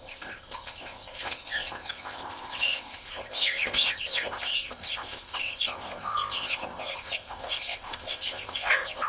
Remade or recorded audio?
remade